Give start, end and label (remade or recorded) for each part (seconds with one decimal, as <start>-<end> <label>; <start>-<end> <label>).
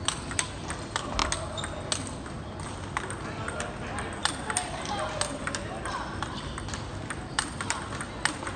0.0-8.6 recorded